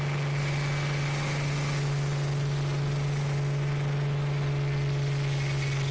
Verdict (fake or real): real